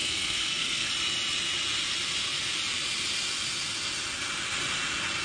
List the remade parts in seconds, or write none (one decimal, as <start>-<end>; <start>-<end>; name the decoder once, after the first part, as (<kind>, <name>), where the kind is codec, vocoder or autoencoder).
0.0-0.9 (codec, SNAC)